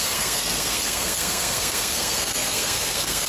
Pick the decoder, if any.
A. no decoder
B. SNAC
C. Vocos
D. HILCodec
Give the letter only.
B